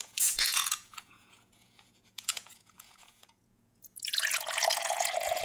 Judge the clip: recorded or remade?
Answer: remade